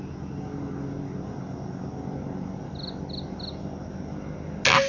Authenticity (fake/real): real